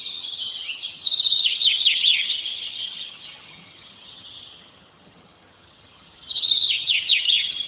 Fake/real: fake